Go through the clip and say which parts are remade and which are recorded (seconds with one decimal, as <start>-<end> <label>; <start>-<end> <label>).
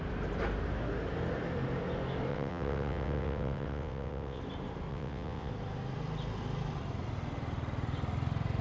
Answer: 0.0-2.3 recorded; 2.3-4.4 remade; 4.4-4.9 recorded; 4.9-5.5 remade; 5.5-8.6 recorded